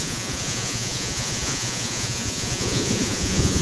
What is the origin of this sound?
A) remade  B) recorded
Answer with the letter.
A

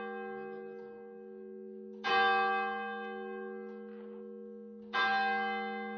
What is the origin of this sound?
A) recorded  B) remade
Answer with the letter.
A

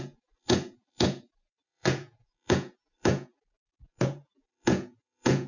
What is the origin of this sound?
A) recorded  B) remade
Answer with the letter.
B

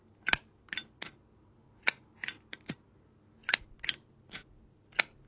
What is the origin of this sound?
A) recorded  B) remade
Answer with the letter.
A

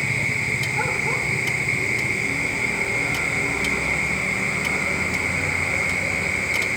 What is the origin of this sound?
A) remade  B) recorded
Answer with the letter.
B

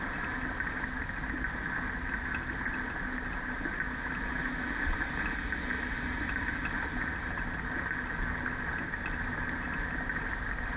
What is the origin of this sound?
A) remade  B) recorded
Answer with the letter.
B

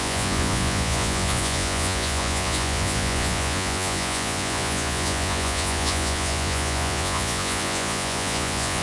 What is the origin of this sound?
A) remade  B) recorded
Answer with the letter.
A